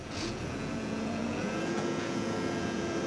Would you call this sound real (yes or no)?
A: no